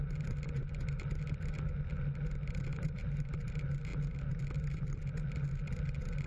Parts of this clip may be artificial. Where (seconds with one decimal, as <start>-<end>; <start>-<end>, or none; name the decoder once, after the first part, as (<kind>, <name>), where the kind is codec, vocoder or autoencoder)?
2.7-3.5 (vocoder, BigVGAN v2)